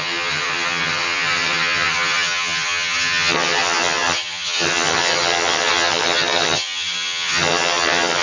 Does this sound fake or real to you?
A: fake